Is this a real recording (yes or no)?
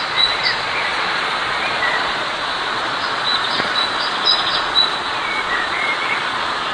no